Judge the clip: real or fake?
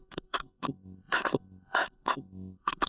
fake